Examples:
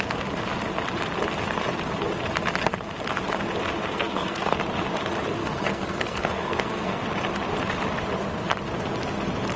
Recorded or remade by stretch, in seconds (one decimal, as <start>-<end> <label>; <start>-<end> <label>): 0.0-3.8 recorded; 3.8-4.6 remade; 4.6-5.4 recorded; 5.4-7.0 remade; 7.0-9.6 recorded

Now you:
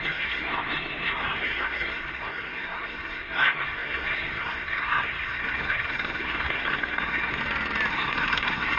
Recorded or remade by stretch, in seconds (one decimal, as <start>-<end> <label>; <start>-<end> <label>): 0.0-7.4 remade; 7.4-7.9 recorded; 7.9-8.8 remade

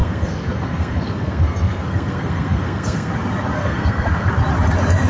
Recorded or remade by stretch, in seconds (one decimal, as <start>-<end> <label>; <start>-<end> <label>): 0.0-3.1 remade; 3.1-3.6 recorded; 3.6-4.3 remade; 4.3-5.1 recorded